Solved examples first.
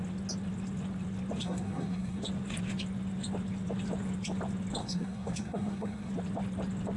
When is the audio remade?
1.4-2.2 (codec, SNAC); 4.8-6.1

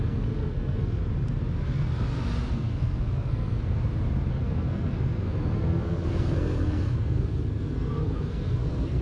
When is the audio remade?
0.0-1.0 (codec, SNAC); 2.5-3.8; 4.3-9.0

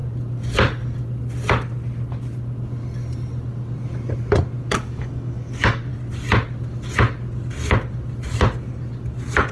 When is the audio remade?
4.7-5.9 (codec, DAC)